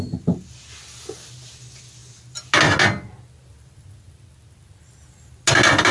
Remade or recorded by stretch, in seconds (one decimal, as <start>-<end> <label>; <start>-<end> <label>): 0.0-5.9 recorded